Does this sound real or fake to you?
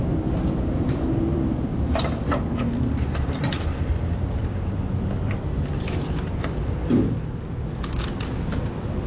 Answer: fake